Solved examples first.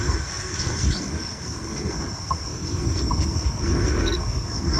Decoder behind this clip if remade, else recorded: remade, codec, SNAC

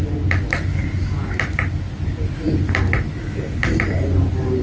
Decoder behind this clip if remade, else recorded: recorded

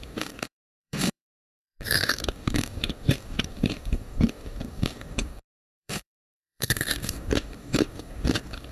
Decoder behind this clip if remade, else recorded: remade, codec, DAC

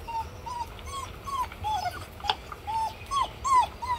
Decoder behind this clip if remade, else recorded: recorded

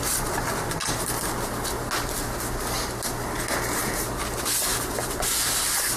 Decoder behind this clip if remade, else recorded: recorded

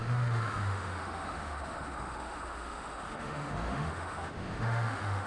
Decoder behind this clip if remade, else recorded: remade, autoencoder, DAC-VAE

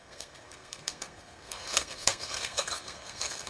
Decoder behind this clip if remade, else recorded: remade, codec, SNAC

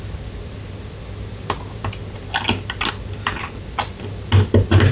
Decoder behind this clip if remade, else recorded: recorded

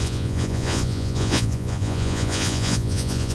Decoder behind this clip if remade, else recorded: remade, vocoder, Vocos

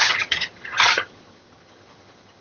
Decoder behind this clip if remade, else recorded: remade, vocoder, HiFi-GAN